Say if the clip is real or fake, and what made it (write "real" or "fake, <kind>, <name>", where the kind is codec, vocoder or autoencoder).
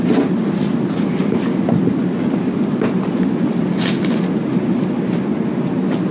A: real